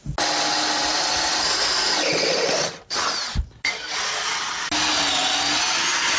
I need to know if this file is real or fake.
real